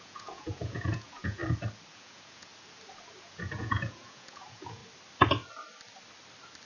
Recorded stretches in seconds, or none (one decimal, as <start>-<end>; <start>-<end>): 1.4-1.9; 2.5-3.2; 4.8-6.7

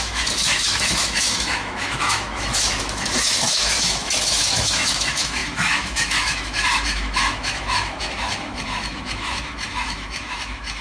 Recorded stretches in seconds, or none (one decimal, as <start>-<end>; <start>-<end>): none

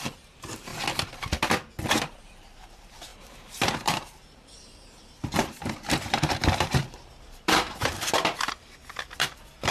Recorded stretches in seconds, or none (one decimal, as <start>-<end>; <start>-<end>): 0.7-1.9

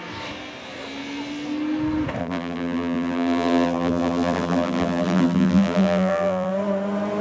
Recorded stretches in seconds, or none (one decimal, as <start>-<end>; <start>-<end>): 0.0-2.2; 6.5-7.2

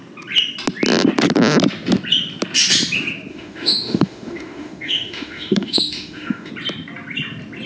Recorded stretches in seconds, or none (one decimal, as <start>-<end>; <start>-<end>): 0.0-3.3; 6.5-7.7

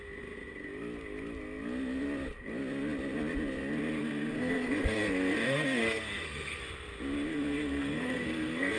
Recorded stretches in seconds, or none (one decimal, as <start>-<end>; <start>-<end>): 0.0-4.0; 6.6-7.3

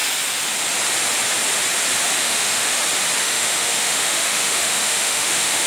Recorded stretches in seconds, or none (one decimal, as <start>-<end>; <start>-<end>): 0.0-2.2; 2.8-3.2